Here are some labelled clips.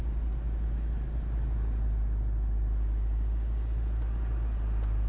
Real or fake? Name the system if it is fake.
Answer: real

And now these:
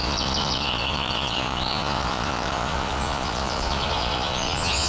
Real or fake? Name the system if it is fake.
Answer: fake, vocoder, Vocos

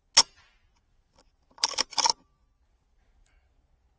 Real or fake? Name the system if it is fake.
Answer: real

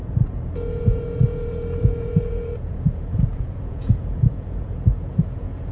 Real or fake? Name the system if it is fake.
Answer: fake, vocoder, Vocos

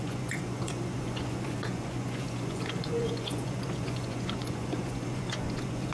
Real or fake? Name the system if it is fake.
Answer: fake, vocoder, Vocos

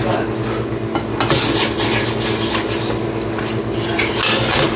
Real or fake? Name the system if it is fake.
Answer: real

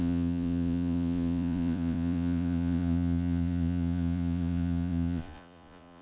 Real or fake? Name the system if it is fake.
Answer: fake, vocoder, Vocos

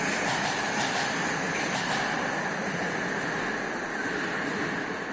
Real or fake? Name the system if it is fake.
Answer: real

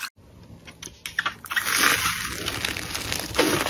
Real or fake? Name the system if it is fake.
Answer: real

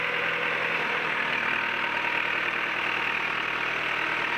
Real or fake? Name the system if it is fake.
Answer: real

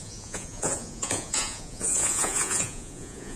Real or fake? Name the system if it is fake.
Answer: fake, vocoder, Vocos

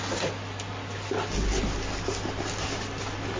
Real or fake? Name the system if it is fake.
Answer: real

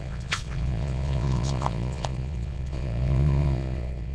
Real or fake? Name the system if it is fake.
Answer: fake, vocoder, Vocos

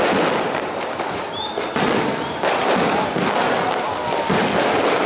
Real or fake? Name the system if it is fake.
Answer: real